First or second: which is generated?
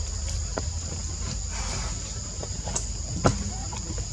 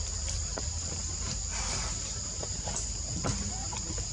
second